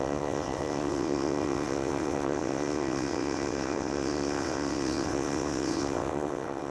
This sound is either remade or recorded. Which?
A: remade